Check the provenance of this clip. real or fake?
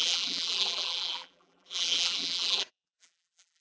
fake